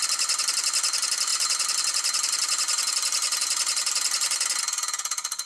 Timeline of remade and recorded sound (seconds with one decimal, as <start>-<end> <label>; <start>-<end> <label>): 0.0-5.5 recorded